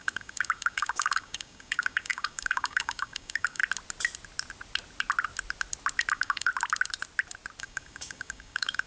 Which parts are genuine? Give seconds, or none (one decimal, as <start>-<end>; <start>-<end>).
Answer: 3.6-6.1; 6.5-7.6

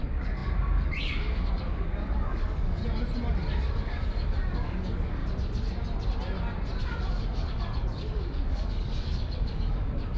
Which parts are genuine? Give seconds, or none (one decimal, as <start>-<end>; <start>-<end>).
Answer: 2.8-3.7; 5.2-6.8

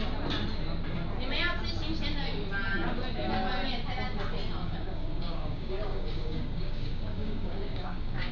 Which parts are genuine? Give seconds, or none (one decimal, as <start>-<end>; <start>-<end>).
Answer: 0.0-4.6

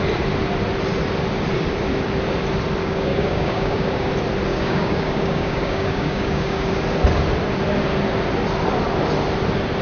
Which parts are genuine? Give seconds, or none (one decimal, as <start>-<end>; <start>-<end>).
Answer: 0.0-2.8; 4.1-4.5; 6.7-9.8